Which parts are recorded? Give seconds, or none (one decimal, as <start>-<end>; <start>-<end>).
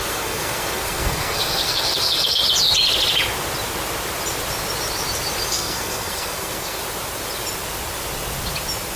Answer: 2.4-5.5; 6.8-9.0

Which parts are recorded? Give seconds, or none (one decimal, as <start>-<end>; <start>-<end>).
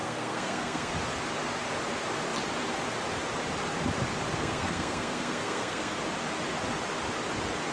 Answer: 0.9-4.4; 6.0-7.7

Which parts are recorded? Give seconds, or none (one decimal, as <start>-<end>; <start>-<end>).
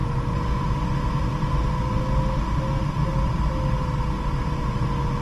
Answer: 0.0-5.2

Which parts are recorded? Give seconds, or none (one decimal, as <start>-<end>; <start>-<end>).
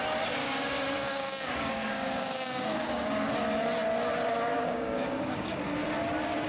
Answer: 0.0-0.4; 3.3-4.5; 5.6-6.5